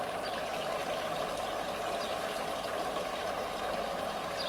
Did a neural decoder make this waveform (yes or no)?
yes